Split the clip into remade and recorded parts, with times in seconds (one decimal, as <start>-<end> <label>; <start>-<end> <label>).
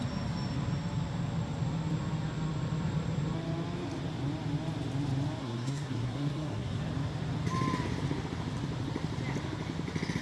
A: 0.0-5.4 recorded; 5.4-6.8 remade; 6.8-10.2 recorded